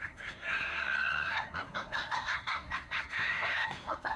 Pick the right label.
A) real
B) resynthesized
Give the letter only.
B